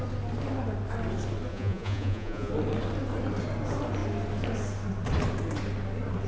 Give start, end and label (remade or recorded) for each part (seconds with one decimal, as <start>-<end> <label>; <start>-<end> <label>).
0.0-1.5 recorded; 1.5-2.5 remade; 2.5-6.3 recorded